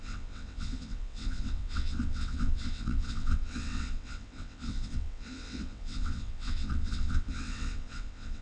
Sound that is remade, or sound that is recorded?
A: remade